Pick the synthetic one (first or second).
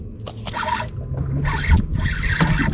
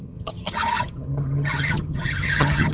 second